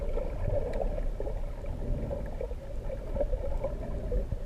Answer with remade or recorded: recorded